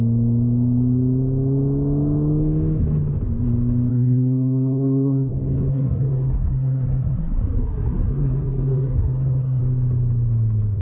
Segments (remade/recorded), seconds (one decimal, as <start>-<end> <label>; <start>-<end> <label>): 0.0-3.9 recorded; 3.9-5.3 remade; 5.3-5.7 recorded; 5.7-9.6 remade; 9.6-10.8 recorded